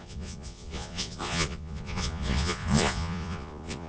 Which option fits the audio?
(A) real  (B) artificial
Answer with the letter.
B